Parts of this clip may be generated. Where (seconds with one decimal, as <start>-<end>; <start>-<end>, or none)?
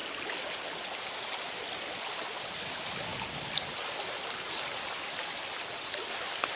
none